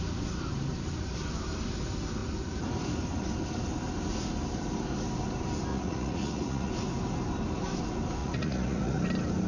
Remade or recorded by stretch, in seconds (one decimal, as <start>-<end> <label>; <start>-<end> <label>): 0.0-5.7 recorded; 5.7-6.7 remade; 6.7-8.2 recorded; 8.2-9.0 remade; 9.0-9.5 recorded

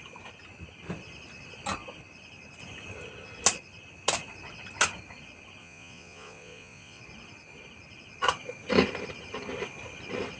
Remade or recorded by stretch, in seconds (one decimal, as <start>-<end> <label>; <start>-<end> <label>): 0.0-5.6 recorded; 5.6-7.0 remade; 7.0-10.4 recorded

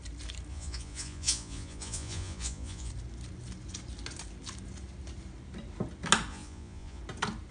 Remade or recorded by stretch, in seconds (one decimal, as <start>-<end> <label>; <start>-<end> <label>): 0.0-0.5 recorded; 0.5-2.9 remade; 2.9-6.3 recorded; 6.3-7.0 remade; 7.0-7.5 recorded

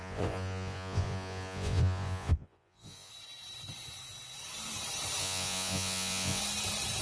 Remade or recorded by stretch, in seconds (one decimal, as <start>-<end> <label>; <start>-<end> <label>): 0.0-3.1 remade; 3.1-5.2 recorded; 5.2-6.4 remade; 6.4-7.0 recorded

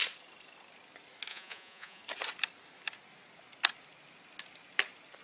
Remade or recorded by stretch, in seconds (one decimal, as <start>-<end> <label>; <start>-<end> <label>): 0.0-1.3 recorded; 1.3-2.0 remade; 2.0-5.2 recorded